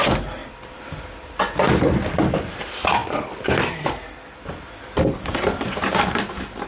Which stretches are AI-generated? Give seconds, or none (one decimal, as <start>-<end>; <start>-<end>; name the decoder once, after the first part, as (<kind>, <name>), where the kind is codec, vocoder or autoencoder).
none